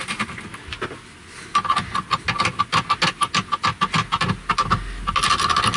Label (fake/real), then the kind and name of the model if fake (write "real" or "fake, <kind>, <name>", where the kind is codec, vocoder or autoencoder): real